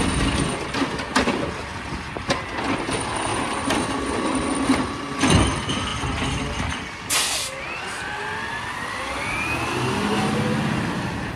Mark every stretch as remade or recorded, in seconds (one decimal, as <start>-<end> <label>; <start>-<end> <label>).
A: 0.0-11.4 recorded